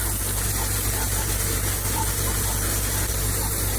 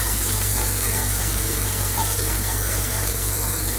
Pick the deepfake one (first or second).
second